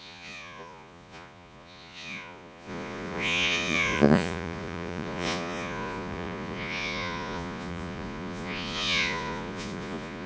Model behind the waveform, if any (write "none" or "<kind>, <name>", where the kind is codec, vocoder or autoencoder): vocoder, Vocos